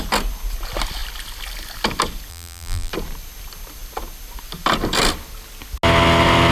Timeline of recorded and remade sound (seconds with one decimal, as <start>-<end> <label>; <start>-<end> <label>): 0.0-2.3 recorded; 2.3-2.9 remade; 2.9-6.5 recorded